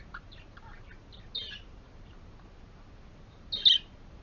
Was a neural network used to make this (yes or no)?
no